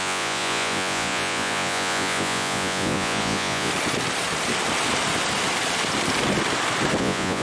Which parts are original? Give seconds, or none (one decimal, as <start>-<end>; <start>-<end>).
3.7-7.0